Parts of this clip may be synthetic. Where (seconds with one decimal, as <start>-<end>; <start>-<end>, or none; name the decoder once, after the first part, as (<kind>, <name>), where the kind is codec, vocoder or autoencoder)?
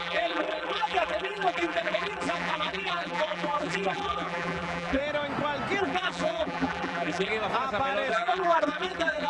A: 0.0-5.0 (vocoder, BigVGAN v2); 5.8-7.3; 8.1-9.3